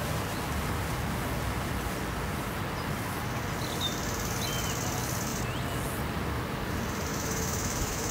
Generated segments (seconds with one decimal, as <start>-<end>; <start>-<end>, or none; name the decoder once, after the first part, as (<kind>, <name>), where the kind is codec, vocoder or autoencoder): 7.1-8.1 (autoencoder, DAC-VAE)